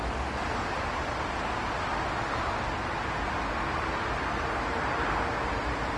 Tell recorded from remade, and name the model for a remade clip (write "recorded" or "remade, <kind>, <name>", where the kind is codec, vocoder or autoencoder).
recorded